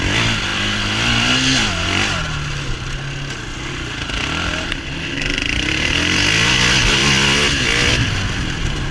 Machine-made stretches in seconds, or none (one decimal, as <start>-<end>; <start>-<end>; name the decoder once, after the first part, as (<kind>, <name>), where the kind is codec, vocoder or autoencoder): none